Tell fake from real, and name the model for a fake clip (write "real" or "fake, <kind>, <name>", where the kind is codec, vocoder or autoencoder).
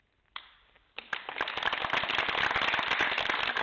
real